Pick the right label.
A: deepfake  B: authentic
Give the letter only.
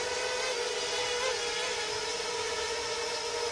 B